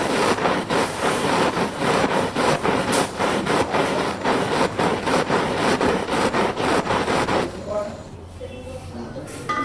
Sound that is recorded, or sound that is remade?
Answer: remade